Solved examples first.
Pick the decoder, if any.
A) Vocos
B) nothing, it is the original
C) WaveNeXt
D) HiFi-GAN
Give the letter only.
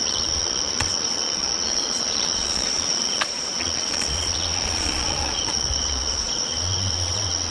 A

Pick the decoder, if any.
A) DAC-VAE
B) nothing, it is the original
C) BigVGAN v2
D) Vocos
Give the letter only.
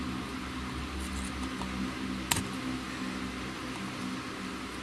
B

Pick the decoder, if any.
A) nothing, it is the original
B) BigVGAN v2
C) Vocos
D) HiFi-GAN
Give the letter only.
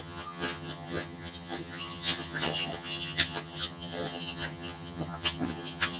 D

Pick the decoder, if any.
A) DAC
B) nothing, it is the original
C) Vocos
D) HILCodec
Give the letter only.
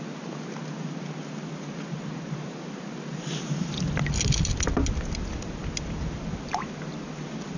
B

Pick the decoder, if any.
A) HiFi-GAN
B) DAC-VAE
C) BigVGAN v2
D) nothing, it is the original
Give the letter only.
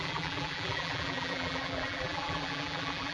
C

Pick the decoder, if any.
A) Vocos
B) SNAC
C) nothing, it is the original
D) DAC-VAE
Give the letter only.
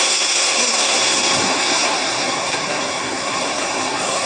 B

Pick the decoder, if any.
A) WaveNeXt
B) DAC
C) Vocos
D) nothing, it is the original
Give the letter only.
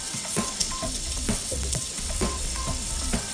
A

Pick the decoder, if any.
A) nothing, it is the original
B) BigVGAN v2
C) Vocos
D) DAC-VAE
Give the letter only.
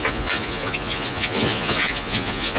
C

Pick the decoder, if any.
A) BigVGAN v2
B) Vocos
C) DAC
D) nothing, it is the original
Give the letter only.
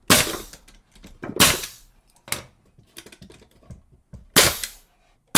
D